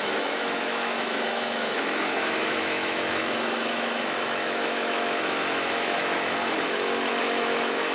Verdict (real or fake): fake